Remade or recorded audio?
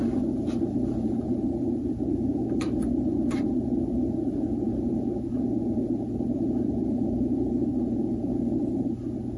remade